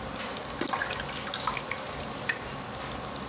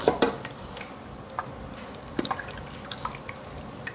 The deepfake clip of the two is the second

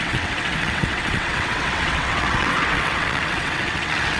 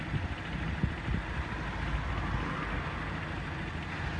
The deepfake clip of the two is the first